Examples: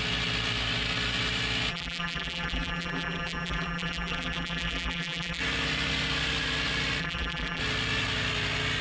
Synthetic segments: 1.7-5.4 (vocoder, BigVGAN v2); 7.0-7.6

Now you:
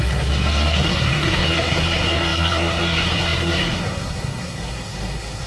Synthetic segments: 0.0-5.5 (codec, SNAC)

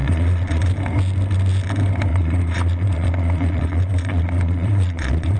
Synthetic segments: 0.0-0.7 (vocoder, Vocos); 2.1-5.4

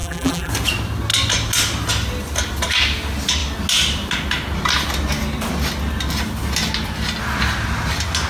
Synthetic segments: 0.0-0.5 (vocoder, BigVGAN v2)

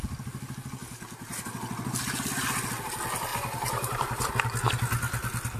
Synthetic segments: 3.3-4.3 (vocoder, BigVGAN v2)

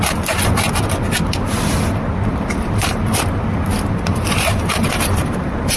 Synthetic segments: 2.3-5.8 (vocoder, BigVGAN v2)

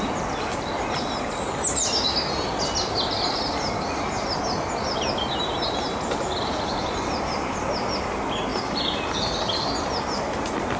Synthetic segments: none